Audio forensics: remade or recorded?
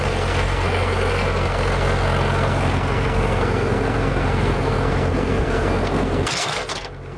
remade